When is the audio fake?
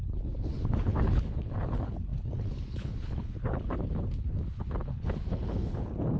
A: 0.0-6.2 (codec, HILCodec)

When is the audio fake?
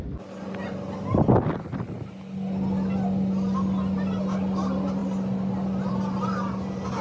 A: none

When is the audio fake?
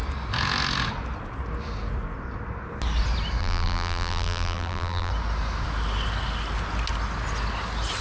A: 3.4-5.1 (vocoder, BigVGAN v2)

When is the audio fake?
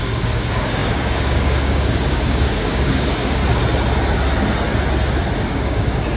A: 0.0-3.4 (codec, DAC); 5.5-6.2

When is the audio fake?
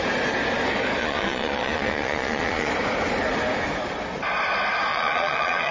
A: 1.0-2.7 (vocoder, Vocos); 4.9-5.7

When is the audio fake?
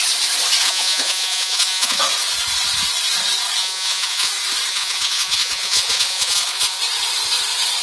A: 0.6-2.0 (vocoder, Vocos); 3.6-4.3; 4.7-6.8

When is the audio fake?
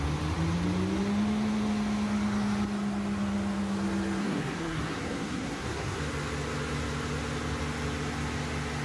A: 4.2-6.0 (codec, SNAC)